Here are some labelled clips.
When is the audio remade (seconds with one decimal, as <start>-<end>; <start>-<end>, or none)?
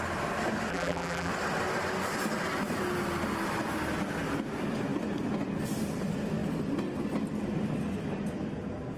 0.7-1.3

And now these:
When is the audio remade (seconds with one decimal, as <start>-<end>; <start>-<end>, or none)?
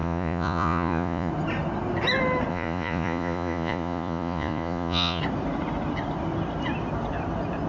0.0-1.3; 2.5-5.2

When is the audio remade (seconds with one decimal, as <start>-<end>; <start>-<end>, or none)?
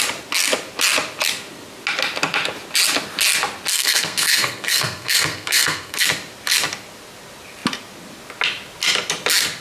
3.7-6.0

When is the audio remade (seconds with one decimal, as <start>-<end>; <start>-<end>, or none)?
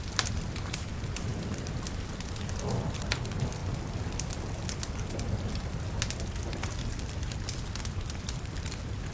0.0-3.6; 6.6-9.1